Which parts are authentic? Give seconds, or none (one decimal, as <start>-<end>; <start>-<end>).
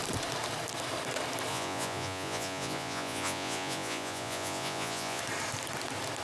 0.0-1.5; 5.2-6.2